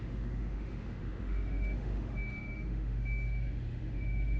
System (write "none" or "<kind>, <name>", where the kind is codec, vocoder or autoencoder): autoencoder, DAC-VAE